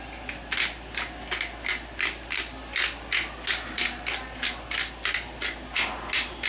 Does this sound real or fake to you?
real